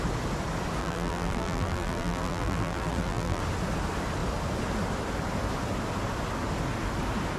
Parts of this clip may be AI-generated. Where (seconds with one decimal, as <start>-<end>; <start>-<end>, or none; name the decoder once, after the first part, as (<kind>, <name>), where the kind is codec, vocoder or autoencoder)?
0.8-3.4 (vocoder, BigVGAN v2)